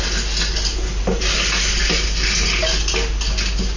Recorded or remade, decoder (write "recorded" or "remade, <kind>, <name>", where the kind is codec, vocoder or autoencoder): recorded